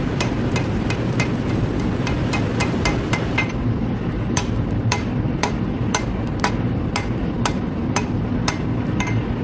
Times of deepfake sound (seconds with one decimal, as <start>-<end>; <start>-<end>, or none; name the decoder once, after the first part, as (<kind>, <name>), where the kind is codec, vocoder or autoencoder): 0.0-9.4 (vocoder, BigVGAN v2)